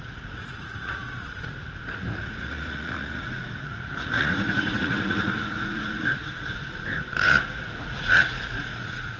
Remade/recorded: remade